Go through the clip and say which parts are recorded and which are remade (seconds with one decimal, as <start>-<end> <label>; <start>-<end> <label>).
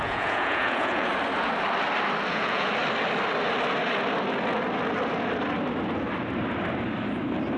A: 0.0-1.1 remade; 1.1-2.3 recorded; 2.3-2.7 remade; 2.7-7.6 recorded